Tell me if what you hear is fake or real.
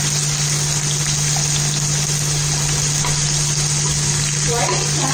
real